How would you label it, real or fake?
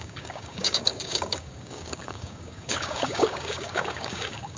fake